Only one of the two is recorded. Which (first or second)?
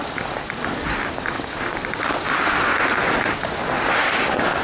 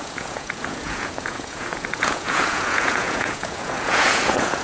first